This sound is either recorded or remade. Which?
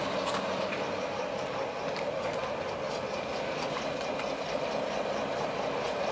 recorded